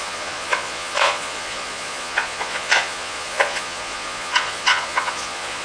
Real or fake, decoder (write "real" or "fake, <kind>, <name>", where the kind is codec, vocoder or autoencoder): fake, vocoder, Vocos